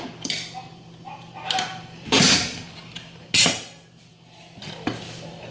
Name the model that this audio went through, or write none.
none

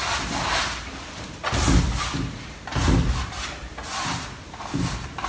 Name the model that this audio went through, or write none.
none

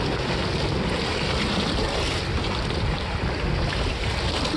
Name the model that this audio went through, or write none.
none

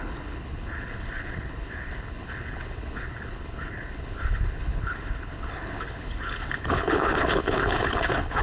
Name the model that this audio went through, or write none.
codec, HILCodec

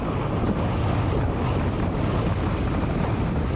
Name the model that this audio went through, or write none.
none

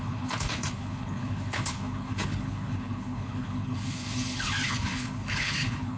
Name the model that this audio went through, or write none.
codec, HILCodec